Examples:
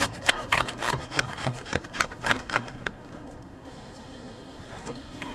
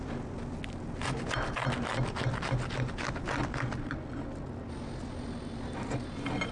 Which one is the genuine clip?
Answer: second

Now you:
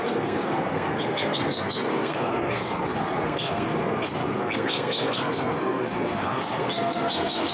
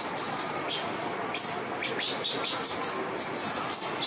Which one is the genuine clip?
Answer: second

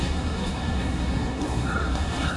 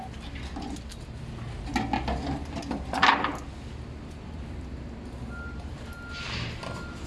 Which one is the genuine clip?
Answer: second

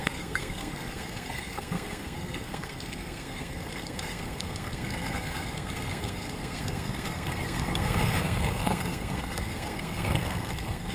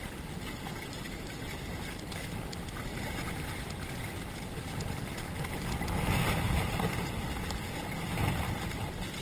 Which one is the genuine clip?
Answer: second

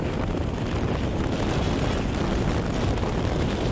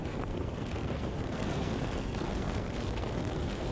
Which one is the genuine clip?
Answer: first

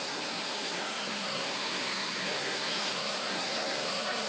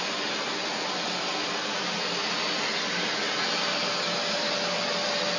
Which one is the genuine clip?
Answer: second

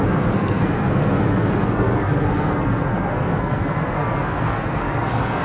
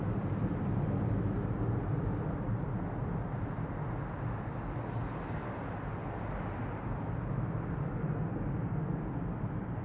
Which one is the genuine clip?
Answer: second